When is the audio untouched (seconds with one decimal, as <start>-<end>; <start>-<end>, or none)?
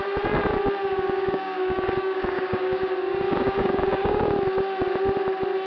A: 0.0-0.8; 4.2-5.7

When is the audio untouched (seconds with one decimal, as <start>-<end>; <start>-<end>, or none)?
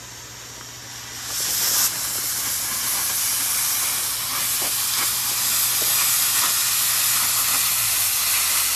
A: 0.0-8.8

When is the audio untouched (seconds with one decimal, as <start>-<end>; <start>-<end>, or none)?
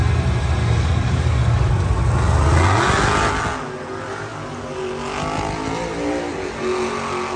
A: 0.0-0.6; 1.7-7.4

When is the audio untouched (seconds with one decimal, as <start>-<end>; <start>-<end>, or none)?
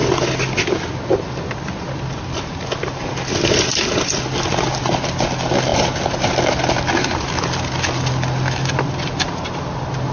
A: 0.0-10.1